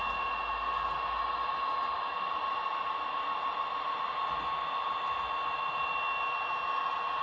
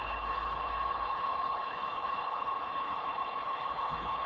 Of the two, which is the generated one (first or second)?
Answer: second